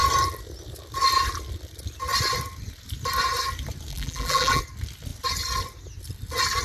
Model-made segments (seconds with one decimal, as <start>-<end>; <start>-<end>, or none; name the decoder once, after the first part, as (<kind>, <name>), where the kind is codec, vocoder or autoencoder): 3.9-4.6 (vocoder, BigVGAN v2)